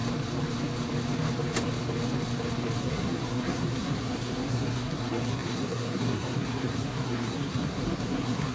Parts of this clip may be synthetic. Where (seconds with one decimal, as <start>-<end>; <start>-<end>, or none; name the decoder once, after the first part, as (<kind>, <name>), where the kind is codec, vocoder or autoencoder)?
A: 2.8-8.5 (codec, SNAC)